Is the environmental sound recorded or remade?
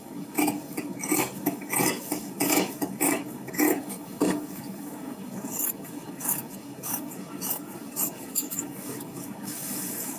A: remade